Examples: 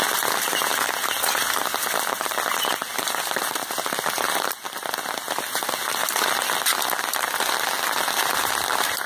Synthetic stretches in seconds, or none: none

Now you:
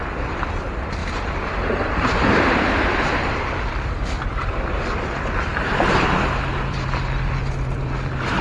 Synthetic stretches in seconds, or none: 1.0-3.5 (vocoder, BigVGAN v2)

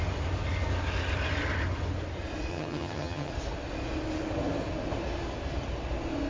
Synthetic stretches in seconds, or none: 2.5-3.3 (vocoder, HiFi-GAN)

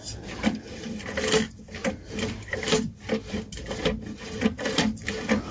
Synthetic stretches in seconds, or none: 1.8-3.4 (vocoder, BigVGAN v2)

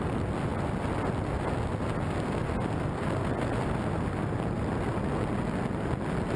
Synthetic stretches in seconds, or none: none

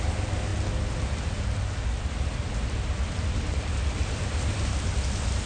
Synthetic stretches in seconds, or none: none

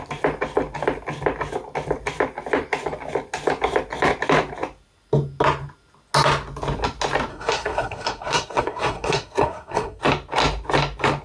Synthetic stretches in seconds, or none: 7.3-10.0 (codec, SNAC)